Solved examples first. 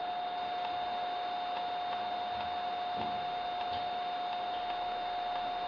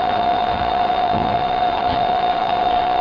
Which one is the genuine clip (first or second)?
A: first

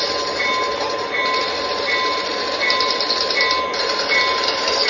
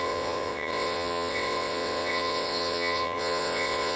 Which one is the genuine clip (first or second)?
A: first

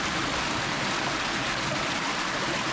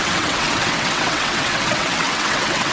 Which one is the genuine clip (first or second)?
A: first